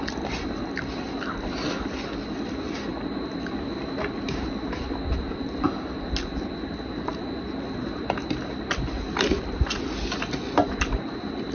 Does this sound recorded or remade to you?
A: recorded